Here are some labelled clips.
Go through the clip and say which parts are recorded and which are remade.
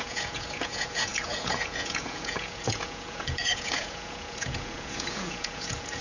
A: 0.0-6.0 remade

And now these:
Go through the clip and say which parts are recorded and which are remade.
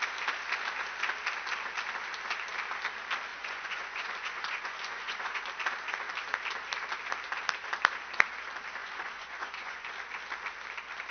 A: 0.0-3.3 recorded; 3.3-5.5 remade; 5.5-8.8 recorded; 8.8-9.9 remade; 9.9-11.1 recorded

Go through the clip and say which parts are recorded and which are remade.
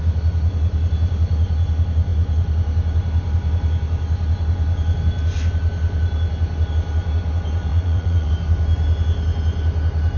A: 0.0-7.7 recorded; 7.7-8.3 remade; 8.3-10.2 recorded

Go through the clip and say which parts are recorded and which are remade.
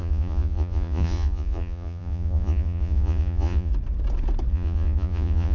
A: 0.0-3.7 remade; 3.7-4.5 recorded; 4.5-5.5 remade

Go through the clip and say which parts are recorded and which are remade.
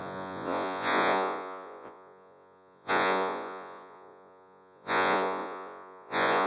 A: 0.0-6.5 remade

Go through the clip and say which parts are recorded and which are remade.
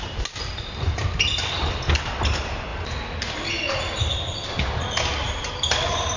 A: 0.0-6.2 recorded